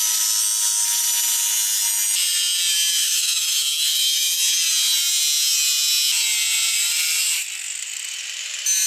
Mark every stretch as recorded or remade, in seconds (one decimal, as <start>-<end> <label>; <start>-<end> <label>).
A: 0.0-3.0 recorded; 3.0-4.4 remade; 4.4-8.9 recorded